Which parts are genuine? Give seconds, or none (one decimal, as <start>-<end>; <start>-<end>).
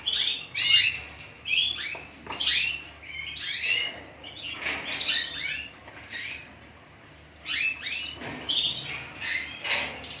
0.0-2.5; 3.9-10.2